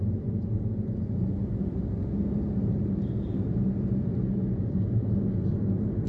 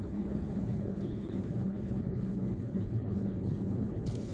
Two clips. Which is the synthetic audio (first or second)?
second